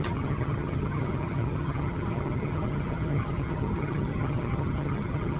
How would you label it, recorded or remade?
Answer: remade